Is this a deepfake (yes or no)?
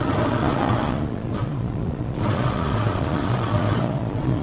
yes